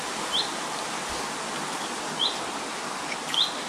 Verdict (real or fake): real